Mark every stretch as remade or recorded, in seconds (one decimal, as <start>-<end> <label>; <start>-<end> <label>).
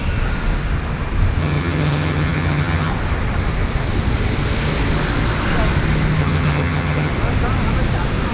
0.0-1.4 recorded; 1.4-2.9 remade; 2.9-6.2 recorded; 6.2-7.1 remade; 7.1-8.3 recorded